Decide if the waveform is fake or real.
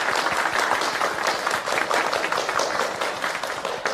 real